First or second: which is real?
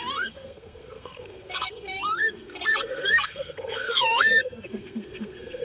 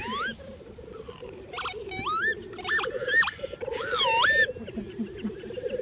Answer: second